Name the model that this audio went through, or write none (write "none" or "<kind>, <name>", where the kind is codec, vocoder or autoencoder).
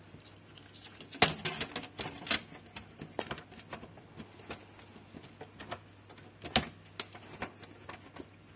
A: none